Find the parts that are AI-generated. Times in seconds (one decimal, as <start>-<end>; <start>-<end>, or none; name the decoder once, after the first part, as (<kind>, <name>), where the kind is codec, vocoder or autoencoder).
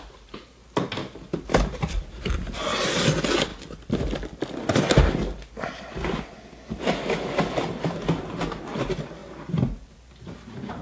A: 1.0-2.6 (vocoder, BigVGAN v2); 9.2-10.1